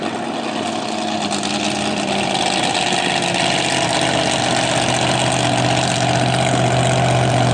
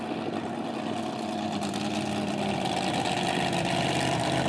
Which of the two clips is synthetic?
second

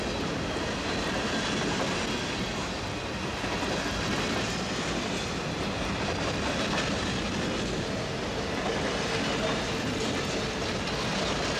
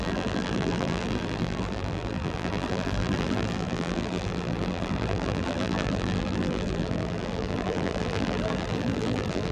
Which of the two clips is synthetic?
second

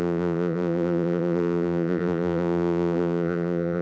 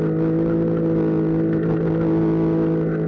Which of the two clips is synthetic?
first